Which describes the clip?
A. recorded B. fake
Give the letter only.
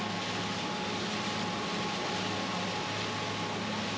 A